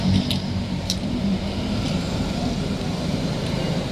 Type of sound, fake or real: fake